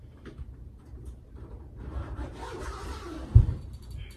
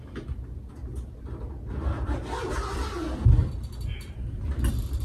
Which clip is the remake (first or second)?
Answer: first